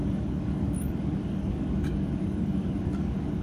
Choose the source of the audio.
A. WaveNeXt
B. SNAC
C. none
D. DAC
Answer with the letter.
D